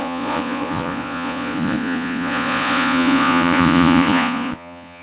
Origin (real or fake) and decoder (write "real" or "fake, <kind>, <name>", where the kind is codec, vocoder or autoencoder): fake, vocoder, Vocos